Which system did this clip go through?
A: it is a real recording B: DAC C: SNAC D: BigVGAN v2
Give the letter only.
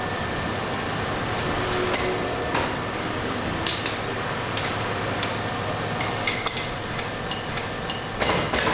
D